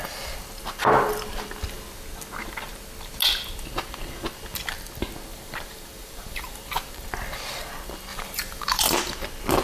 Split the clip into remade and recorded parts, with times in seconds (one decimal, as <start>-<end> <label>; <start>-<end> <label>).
0.0-5.3 recorded; 5.3-7.1 remade; 7.1-8.1 recorded; 8.1-8.8 remade; 8.8-9.6 recorded